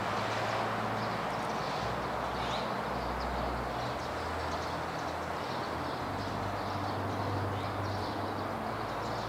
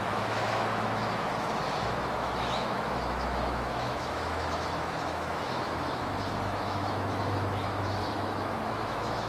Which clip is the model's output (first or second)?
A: second